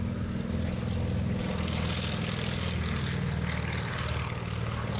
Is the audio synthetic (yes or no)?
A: no